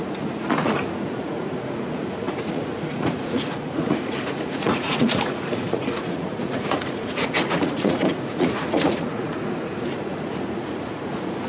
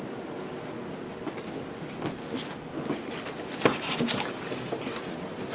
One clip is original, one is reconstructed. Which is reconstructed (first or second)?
first